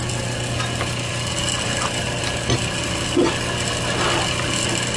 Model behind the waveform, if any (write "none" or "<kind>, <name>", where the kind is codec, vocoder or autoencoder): none